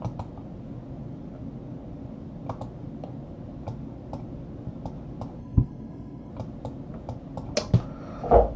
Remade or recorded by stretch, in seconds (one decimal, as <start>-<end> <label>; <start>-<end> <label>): 0.0-5.4 recorded; 5.4-6.3 remade; 6.3-8.6 recorded